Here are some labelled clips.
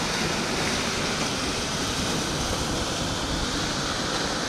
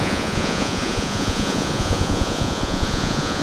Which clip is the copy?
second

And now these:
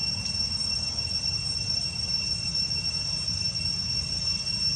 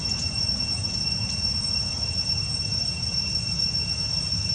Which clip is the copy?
second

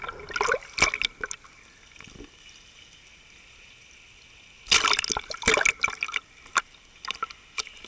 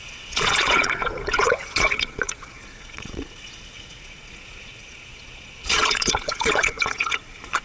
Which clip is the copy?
second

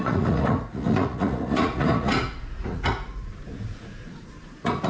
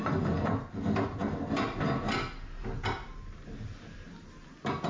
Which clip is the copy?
first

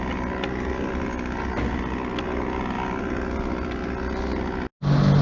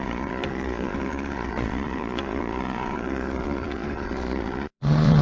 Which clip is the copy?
second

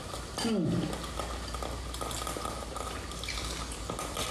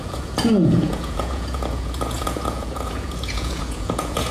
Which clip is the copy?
second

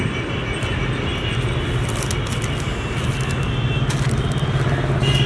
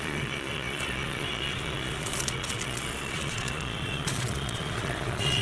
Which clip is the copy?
second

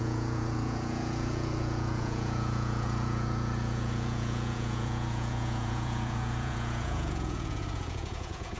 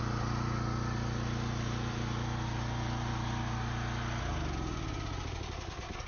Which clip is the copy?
first